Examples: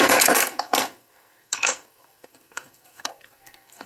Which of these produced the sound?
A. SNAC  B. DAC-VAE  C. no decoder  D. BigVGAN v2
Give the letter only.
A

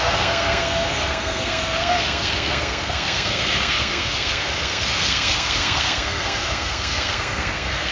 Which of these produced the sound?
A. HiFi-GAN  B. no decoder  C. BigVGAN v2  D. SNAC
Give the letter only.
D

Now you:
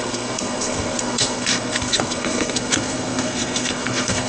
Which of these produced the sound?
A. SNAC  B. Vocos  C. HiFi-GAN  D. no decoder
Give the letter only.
A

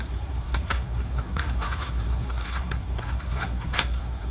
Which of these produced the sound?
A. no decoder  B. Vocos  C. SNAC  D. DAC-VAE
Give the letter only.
C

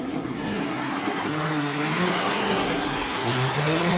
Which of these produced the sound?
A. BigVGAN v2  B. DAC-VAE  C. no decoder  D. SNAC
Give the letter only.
D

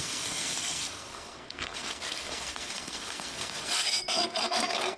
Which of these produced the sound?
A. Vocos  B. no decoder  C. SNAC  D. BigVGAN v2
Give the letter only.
C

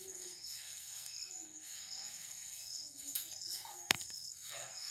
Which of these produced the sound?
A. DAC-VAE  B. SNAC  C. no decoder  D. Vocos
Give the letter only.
B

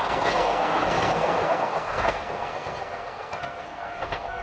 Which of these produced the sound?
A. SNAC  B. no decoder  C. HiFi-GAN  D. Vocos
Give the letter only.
A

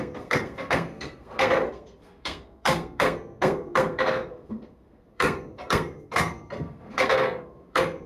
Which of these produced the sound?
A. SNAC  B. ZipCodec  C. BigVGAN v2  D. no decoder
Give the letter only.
A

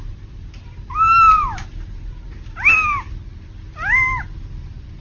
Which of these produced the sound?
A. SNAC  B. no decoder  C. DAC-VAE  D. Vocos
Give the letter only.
B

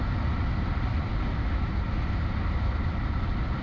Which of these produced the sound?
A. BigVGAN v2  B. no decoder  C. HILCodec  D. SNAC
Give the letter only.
B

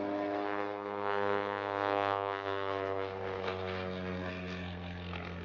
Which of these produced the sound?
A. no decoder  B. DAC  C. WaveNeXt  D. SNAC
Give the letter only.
D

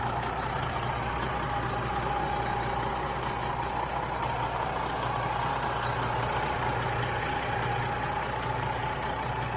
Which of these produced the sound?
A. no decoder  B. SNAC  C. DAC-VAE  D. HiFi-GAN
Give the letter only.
A